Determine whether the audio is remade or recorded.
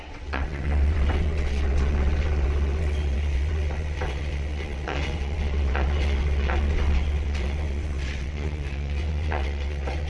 remade